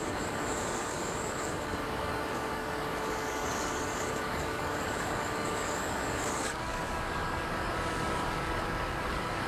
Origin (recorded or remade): remade